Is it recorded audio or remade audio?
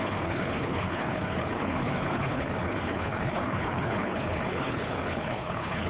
remade